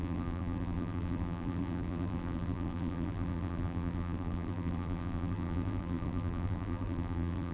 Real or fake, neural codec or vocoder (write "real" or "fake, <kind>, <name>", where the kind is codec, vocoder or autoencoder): fake, vocoder, BigVGAN v2